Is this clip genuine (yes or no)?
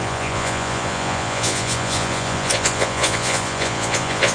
no